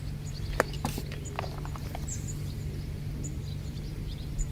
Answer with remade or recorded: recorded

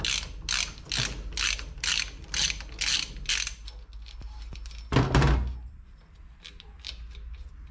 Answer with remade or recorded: recorded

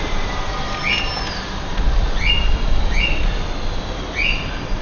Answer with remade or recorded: recorded